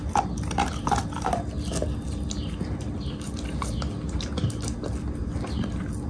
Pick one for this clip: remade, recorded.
recorded